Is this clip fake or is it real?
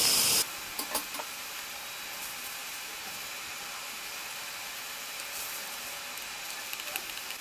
real